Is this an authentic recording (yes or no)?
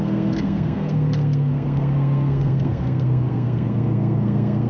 no